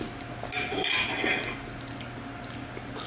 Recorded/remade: recorded